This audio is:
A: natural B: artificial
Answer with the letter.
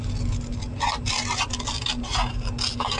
A